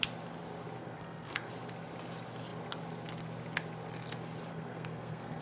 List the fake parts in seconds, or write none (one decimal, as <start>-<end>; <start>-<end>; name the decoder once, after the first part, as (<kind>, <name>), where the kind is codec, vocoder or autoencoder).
0.8-1.5 (codec, SNAC); 4.5-5.4